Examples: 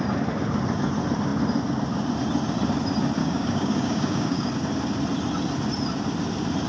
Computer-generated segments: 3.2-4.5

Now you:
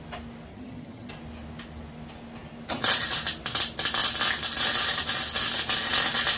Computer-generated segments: 0.5-1.1

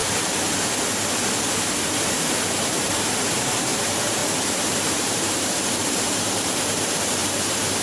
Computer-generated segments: 1.9-4.2; 4.7-7.8